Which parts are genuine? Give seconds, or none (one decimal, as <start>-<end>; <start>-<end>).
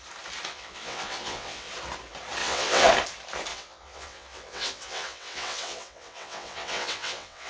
0.0-0.5; 1.7-2.4; 2.9-3.5